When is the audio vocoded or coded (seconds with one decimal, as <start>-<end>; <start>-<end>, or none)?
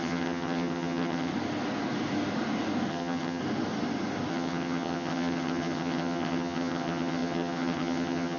0.0-1.3; 2.9-3.4; 4.3-8.4